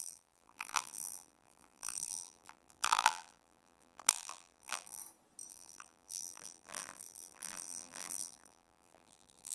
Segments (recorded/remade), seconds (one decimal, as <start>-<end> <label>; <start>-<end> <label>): 0.0-5.0 remade; 5.0-5.5 recorded; 5.5-9.5 remade